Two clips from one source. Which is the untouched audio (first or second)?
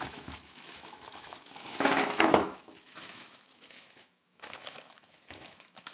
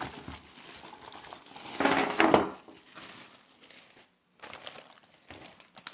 second